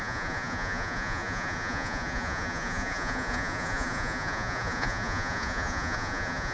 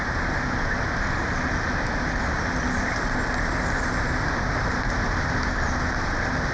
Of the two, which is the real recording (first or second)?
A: second